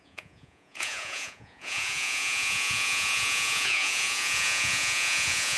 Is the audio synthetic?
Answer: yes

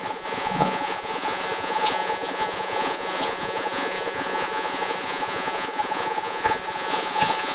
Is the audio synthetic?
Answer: yes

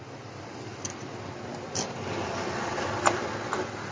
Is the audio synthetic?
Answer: no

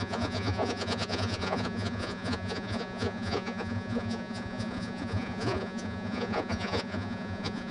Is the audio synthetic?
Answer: yes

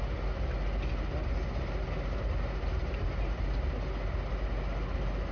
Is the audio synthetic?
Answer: no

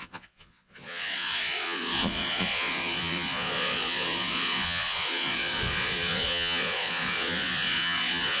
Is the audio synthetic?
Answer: yes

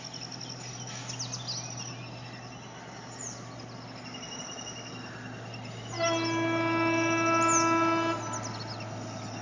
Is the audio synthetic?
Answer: no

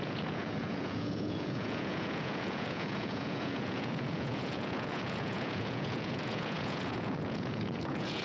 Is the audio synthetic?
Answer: yes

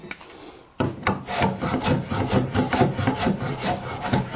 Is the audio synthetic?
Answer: no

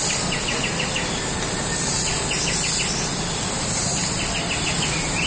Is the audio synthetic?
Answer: no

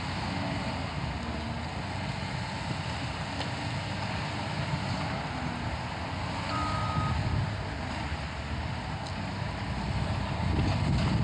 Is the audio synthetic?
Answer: no